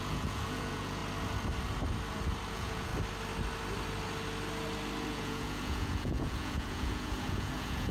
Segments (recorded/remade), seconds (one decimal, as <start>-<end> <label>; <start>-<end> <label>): 0.0-1.0 remade; 1.0-2.5 recorded; 2.5-2.9 remade; 2.9-5.1 recorded; 5.1-7.9 remade